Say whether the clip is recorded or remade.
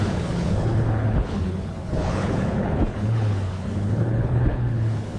remade